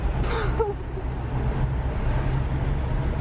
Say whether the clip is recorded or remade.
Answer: recorded